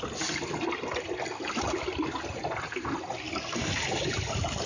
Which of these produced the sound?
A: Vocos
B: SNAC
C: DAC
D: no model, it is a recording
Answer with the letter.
D